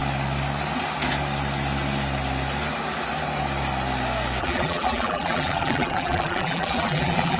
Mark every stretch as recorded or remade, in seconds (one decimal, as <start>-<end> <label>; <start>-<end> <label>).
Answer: 0.0-4.4 recorded; 4.4-7.4 remade